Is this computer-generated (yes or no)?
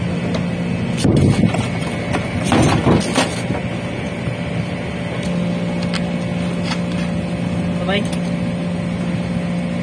no